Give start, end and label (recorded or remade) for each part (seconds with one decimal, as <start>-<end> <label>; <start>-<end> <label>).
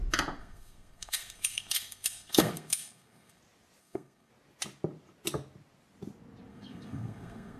0.0-0.4 recorded; 0.4-3.4 remade; 3.4-3.8 recorded; 3.8-4.3 remade; 4.3-6.5 recorded; 6.5-7.6 remade